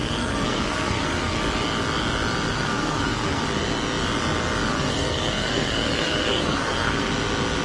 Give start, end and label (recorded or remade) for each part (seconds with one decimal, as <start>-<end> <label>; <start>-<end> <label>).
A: 0.0-1.4 remade; 1.4-2.5 recorded; 2.5-3.4 remade; 3.4-4.7 recorded; 4.7-7.1 remade; 7.1-7.6 recorded